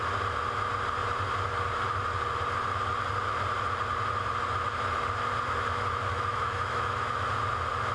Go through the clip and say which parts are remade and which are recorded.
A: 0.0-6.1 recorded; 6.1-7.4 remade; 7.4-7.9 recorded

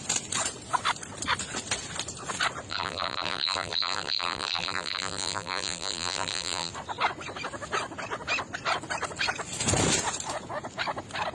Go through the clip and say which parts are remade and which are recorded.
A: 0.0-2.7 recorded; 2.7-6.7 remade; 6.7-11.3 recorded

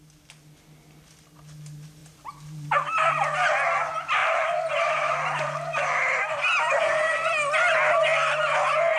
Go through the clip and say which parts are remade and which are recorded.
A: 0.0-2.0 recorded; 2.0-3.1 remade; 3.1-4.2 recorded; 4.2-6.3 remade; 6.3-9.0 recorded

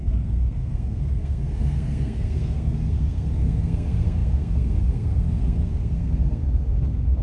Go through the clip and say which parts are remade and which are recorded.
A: 0.0-7.2 remade

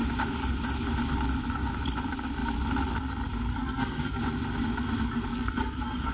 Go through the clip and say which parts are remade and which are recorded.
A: 0.0-3.5 recorded; 3.5-4.2 remade; 4.2-5.3 recorded; 5.3-6.1 remade

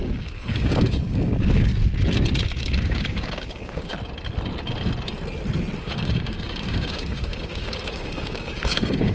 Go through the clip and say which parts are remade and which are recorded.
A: 0.0-1.7 remade; 1.7-2.6 recorded; 2.6-3.9 remade; 3.9-5.8 recorded; 5.8-9.1 remade

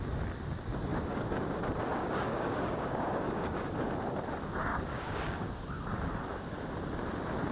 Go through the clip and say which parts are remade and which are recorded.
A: 0.0-0.9 recorded; 0.9-1.5 remade; 1.5-2.0 recorded; 2.0-3.9 remade; 3.9-4.7 recorded; 4.7-5.5 remade; 5.5-7.5 recorded

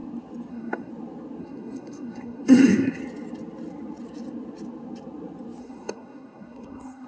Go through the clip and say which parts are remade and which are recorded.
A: 0.0-0.5 recorded; 0.5-0.9 remade; 0.9-1.4 recorded; 1.4-3.0 remade; 3.0-5.6 recorded; 5.6-7.1 remade